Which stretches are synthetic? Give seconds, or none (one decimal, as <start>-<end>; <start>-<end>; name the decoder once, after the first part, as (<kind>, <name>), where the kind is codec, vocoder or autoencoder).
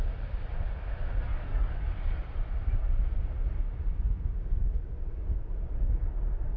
1.3-2.2 (codec, DAC)